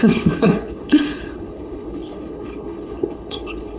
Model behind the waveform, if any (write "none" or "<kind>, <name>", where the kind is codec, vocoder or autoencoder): codec, HILCodec